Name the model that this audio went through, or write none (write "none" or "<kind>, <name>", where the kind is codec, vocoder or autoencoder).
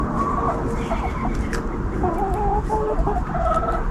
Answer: none